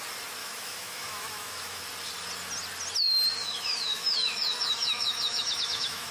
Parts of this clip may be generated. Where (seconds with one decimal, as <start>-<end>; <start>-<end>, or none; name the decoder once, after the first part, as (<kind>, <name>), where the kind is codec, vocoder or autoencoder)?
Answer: 0.4-1.8 (autoencoder, DAC-VAE); 3.4-6.1